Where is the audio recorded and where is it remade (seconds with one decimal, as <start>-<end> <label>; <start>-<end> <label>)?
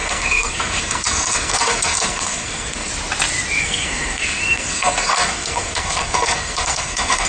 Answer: 0.0-2.9 remade; 2.9-3.6 recorded; 3.6-7.3 remade